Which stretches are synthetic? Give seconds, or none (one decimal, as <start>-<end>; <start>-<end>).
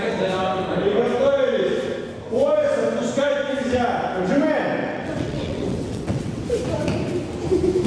4.8-6.4